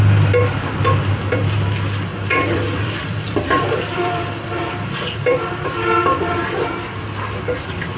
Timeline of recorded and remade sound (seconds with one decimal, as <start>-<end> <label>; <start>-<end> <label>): 0.0-2.1 recorded; 2.1-4.7 remade; 4.7-8.0 recorded

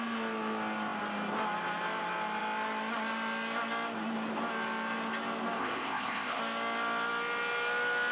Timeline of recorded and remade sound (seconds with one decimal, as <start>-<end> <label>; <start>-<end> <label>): 0.0-5.6 recorded; 5.6-6.4 remade; 6.4-8.1 recorded